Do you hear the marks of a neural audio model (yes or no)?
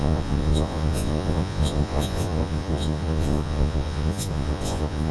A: yes